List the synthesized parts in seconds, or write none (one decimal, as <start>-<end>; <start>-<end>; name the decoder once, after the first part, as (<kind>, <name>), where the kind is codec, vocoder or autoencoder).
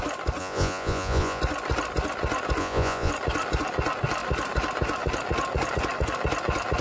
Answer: 0.4-1.4 (vocoder, Vocos); 2.6-3.1